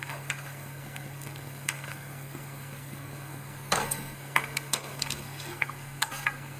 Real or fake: fake